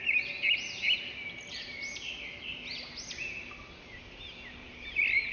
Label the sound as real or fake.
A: real